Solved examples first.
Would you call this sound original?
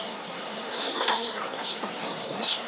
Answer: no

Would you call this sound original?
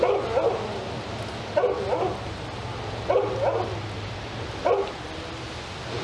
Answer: yes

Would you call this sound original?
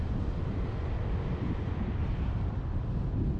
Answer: no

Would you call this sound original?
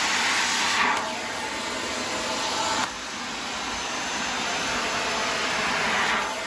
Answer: yes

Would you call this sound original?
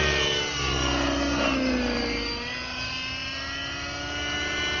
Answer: yes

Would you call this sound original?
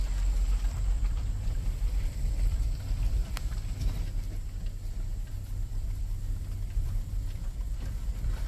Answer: no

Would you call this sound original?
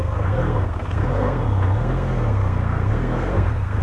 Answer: no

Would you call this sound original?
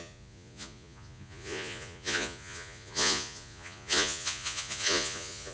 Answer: no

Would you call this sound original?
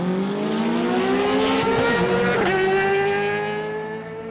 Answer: yes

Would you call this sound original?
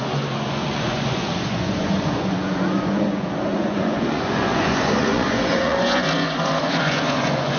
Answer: no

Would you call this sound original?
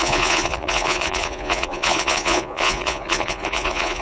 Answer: no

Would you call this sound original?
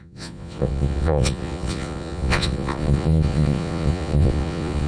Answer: no